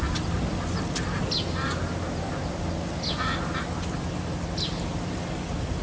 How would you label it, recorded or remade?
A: recorded